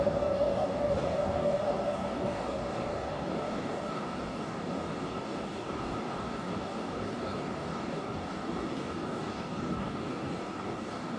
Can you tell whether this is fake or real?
fake